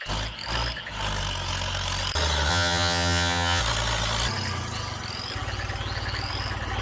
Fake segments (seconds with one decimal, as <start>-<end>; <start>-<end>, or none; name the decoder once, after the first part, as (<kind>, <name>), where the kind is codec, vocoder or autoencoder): 2.5-3.6 (vocoder, HiFi-GAN)

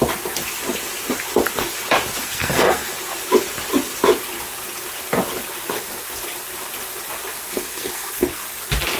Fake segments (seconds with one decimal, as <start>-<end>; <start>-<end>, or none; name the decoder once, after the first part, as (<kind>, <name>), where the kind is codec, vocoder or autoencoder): 2.2-2.9 (codec, SNAC); 7.3-8.6

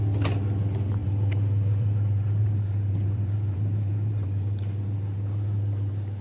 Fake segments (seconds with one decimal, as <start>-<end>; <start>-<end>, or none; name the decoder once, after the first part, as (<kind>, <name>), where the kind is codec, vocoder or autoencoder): 1.0-4.7 (vocoder, BigVGAN v2)